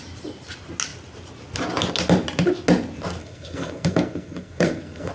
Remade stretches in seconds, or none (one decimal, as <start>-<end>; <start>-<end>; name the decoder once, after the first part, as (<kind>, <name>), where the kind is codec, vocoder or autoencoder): 3.2-5.1 (codec, SNAC)